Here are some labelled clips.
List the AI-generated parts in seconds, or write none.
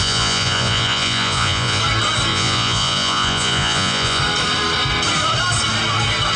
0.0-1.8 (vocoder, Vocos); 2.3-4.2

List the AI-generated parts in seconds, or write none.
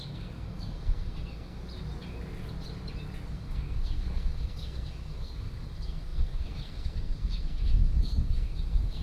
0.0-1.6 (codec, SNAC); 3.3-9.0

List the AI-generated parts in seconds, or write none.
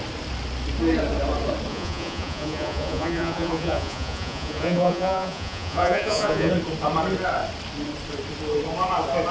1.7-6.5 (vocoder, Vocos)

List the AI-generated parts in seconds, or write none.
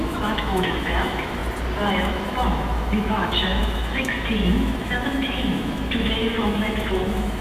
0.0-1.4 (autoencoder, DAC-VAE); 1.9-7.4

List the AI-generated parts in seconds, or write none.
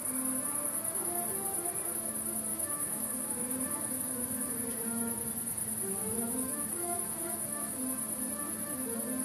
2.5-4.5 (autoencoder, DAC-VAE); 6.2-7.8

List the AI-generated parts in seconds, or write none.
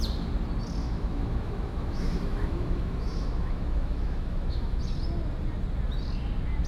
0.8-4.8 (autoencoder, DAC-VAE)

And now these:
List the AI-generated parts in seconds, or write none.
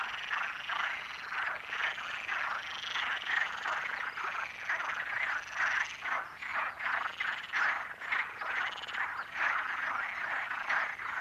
3.1-3.7 (vocoder, BigVGAN v2)